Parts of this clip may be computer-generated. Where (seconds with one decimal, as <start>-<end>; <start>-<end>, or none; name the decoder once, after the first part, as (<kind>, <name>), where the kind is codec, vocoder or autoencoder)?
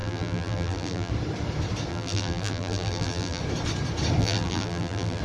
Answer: 0.0-1.1 (vocoder, BigVGAN v2); 1.9-3.4; 4.2-5.2